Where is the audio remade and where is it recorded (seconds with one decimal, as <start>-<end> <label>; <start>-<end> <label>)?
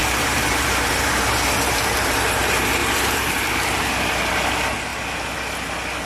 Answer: 0.0-1.9 remade; 1.9-2.8 recorded; 2.8-4.3 remade; 4.3-6.1 recorded